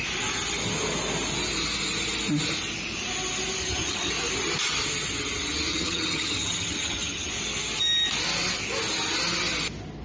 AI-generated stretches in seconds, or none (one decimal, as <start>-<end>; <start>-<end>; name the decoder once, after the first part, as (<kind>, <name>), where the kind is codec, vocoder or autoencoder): 3.6-4.1 (vocoder, HiFi-GAN); 5.7-7.3